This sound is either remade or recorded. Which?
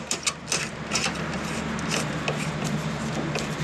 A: recorded